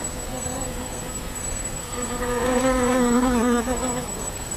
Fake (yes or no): yes